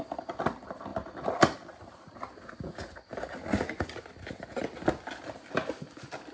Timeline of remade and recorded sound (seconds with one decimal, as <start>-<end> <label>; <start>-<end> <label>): 0.0-6.3 recorded